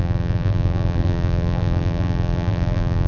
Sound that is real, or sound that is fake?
fake